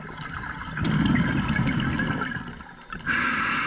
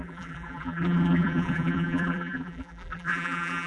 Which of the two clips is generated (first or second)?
second